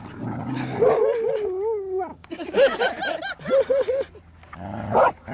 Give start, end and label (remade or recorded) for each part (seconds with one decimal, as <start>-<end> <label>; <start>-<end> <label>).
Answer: 0.0-2.1 recorded; 2.1-2.8 remade; 2.8-5.3 recorded